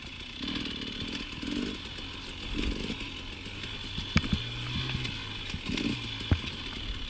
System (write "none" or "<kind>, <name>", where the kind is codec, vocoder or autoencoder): none